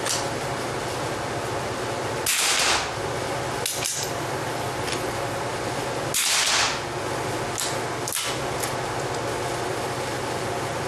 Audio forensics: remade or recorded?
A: recorded